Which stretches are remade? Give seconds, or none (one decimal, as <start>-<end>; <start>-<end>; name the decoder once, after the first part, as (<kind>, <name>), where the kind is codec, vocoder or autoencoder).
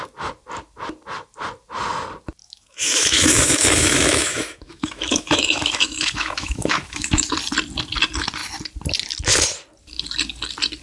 2.4-7.3 (autoencoder, DAC-VAE)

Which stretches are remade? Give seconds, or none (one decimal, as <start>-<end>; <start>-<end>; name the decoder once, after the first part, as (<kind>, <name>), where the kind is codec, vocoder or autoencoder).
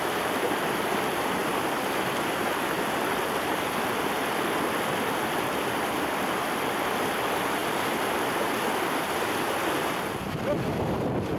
none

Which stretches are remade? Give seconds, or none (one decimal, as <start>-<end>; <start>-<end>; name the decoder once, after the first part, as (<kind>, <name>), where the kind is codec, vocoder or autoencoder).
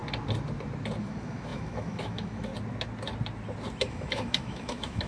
1.0-2.5 (autoencoder, DAC-VAE); 3.9-5.1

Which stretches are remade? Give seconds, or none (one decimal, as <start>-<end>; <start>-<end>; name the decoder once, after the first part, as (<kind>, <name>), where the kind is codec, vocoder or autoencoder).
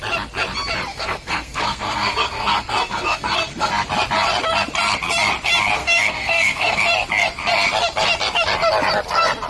0.9-3.7 (codec, SNAC); 5.8-6.8